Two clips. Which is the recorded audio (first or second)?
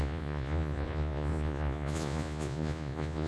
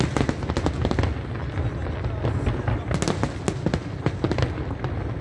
second